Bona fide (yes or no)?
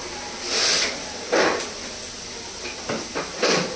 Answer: yes